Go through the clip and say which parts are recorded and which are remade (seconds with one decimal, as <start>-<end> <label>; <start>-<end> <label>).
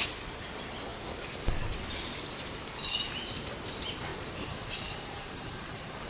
0.0-4.1 recorded; 4.1-6.1 remade